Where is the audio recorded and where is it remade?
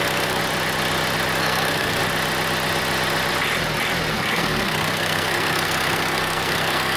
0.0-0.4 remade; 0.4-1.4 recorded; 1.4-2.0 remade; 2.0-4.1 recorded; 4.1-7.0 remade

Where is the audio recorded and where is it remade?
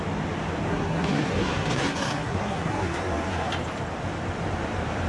0.0-0.7 recorded; 0.7-3.5 remade; 3.5-5.1 recorded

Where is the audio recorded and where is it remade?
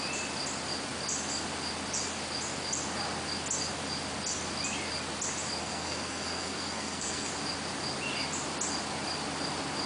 0.0-5.6 recorded; 5.6-7.3 remade; 7.3-9.9 recorded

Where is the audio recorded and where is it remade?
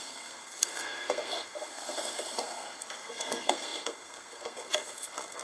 0.0-5.4 remade